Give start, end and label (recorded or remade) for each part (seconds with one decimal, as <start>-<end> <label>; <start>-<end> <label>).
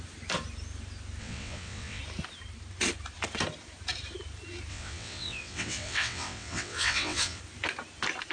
0.0-1.2 recorded; 1.2-2.0 remade; 2.0-4.7 recorded; 4.7-7.4 remade; 7.4-8.3 recorded